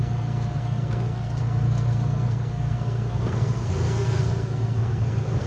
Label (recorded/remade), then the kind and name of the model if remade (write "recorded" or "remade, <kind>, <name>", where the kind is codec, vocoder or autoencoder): remade, codec, SNAC